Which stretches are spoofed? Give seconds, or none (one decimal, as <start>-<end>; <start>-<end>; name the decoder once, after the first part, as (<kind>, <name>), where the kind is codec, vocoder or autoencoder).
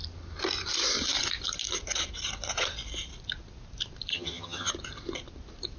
4.1-4.7 (vocoder, HiFi-GAN)